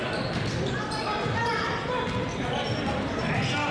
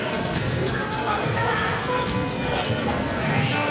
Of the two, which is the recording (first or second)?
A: first